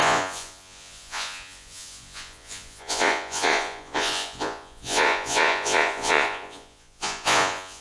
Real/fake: fake